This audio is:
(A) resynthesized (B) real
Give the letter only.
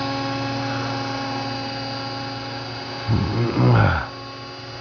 B